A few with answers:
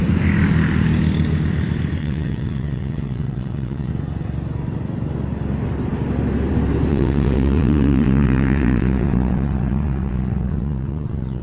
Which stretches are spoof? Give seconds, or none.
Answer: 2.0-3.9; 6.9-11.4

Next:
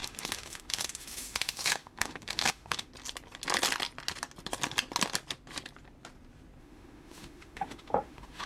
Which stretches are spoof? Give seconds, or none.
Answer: 0.0-2.9; 6.6-8.5